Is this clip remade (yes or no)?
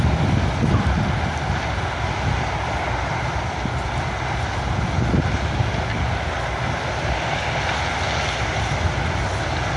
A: no